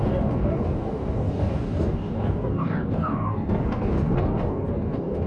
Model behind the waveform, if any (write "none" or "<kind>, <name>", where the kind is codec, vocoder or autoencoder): codec, DAC